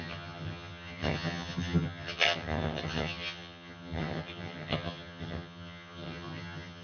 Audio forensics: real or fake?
fake